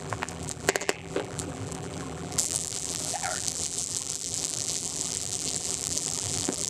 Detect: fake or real fake